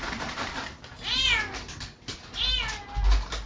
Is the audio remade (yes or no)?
no